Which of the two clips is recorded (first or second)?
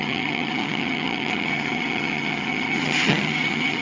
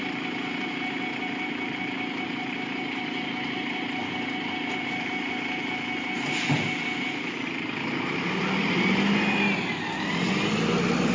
second